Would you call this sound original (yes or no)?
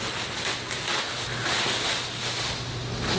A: yes